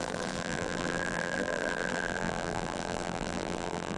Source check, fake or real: fake